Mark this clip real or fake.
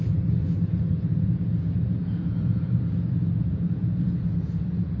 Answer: fake